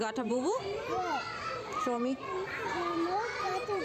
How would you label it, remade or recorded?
remade